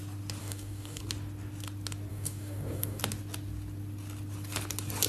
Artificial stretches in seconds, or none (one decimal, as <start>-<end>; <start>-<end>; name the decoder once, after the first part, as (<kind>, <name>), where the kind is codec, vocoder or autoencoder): 0.4-1.0 (codec, DAC); 2.1-3.0